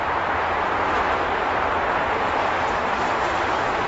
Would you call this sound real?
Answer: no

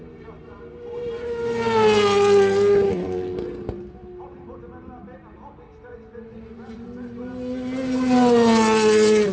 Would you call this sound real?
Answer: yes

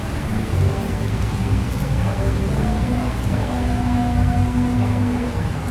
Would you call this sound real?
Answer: no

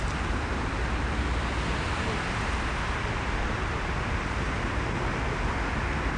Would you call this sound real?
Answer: yes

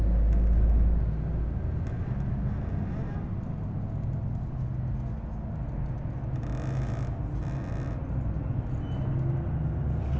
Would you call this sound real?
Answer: yes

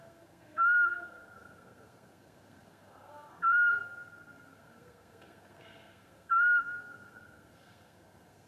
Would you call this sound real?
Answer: no